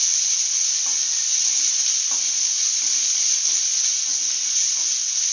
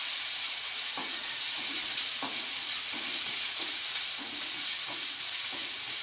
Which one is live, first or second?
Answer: first